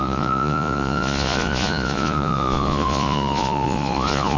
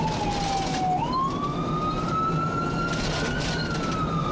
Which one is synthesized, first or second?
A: first